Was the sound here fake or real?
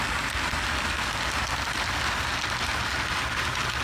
real